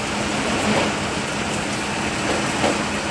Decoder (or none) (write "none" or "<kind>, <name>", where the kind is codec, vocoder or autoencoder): none